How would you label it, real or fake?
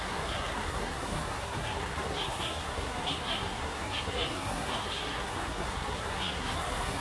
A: fake